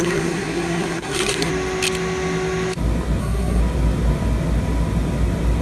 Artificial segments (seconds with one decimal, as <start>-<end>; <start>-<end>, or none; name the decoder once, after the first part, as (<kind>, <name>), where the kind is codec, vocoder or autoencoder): 0.0-1.5 (codec, SNAC); 3.2-3.6